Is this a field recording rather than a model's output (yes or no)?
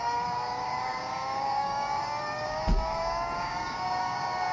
no